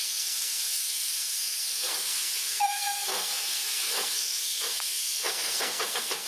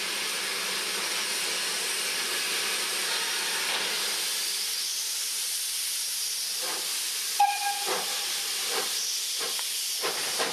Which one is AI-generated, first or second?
first